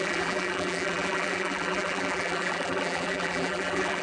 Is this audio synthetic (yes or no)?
yes